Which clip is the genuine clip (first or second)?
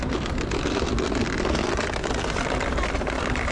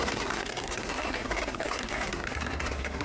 first